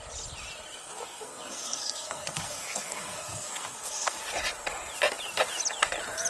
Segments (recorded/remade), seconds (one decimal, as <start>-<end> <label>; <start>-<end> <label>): 0.0-0.8 recorded; 0.8-4.2 remade; 4.2-6.3 recorded